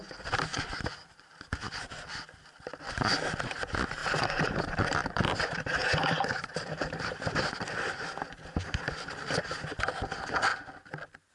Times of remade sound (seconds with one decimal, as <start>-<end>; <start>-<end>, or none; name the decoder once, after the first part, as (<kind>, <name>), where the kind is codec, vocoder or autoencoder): 0.5-2.2 (vocoder, BigVGAN v2); 4.0-7.5